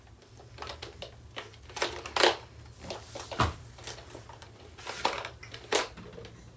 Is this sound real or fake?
real